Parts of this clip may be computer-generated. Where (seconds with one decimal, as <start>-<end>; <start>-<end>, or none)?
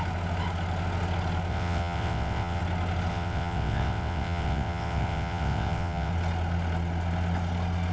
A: 1.5-2.6; 3.1-6.1